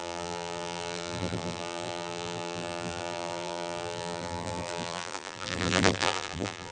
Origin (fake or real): fake